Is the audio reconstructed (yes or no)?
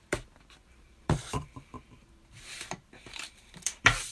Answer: yes